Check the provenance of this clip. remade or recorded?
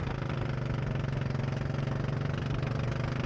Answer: recorded